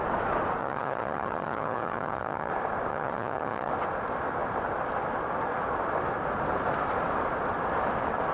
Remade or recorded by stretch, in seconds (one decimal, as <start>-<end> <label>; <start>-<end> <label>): 0.0-0.6 recorded; 0.6-2.5 remade; 2.5-2.9 recorded; 2.9-3.7 remade; 3.7-8.3 recorded